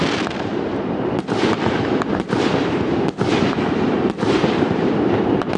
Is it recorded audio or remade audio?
remade